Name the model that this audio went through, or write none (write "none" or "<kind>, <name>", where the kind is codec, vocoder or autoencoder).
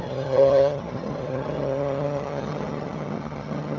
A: vocoder, HiFi-GAN